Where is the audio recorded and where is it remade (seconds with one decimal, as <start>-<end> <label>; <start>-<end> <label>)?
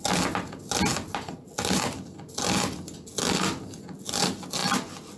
0.0-5.2 recorded